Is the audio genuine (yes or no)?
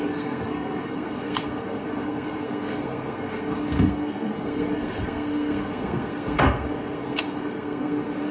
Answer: no